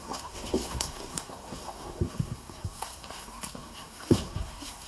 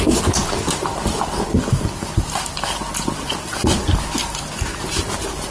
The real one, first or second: second